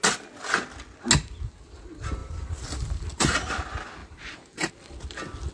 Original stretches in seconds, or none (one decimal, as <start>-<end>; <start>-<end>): 0.0-2.2; 3.5-4.0; 4.7-5.5